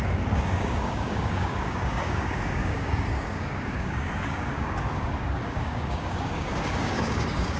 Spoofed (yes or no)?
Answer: yes